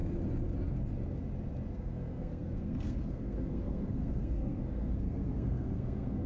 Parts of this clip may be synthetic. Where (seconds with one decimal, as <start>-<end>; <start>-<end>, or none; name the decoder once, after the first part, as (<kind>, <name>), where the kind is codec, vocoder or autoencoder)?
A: 1.7-6.3 (codec, SNAC)